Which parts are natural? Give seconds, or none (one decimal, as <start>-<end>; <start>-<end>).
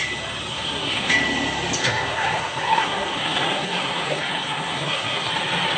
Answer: 0.0-0.5; 1.1-1.8; 5.3-5.8